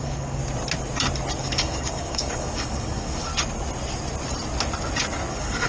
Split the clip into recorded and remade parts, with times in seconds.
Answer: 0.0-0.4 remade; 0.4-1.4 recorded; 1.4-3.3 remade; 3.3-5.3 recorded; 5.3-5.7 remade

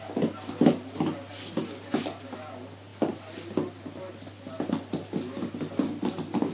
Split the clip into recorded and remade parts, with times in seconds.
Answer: 0.0-6.5 recorded